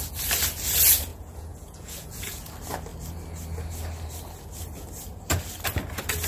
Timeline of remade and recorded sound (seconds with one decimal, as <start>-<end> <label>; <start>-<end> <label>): 0.0-1.1 recorded; 1.1-2.5 remade; 2.5-6.3 recorded